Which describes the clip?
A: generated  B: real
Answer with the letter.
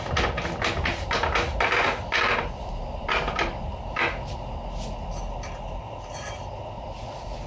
B